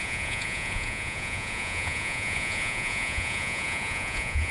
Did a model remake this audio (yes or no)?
yes